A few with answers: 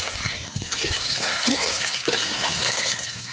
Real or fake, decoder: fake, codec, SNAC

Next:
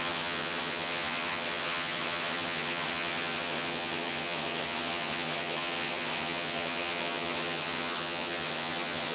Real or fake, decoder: fake, vocoder, HiFi-GAN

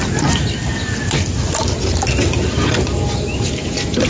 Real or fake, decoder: real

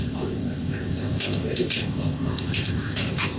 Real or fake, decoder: fake, codec, ZipCodec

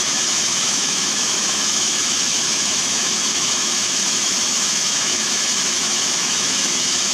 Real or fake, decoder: fake, autoencoder, DAC-VAE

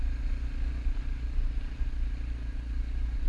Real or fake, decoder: real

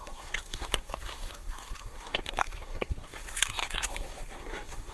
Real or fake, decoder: fake, codec, SNAC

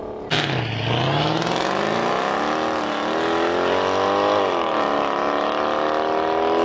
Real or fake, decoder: real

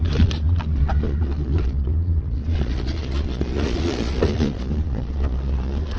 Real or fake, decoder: fake, vocoder, Vocos